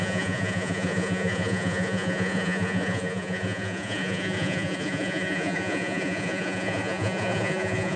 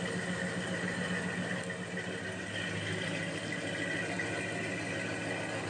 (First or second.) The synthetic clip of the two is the first